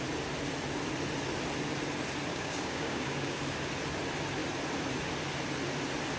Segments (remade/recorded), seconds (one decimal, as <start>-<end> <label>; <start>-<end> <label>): 0.0-2.3 recorded; 2.3-3.4 remade; 3.4-6.2 recorded